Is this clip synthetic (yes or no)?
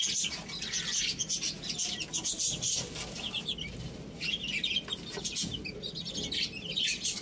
no